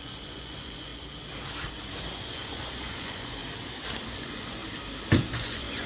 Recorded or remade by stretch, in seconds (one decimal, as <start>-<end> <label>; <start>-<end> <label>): 0.0-0.9 remade; 0.9-2.0 recorded; 2.0-3.4 remade; 3.4-4.1 recorded; 4.1-4.6 remade; 4.6-5.3 recorded; 5.3-5.9 remade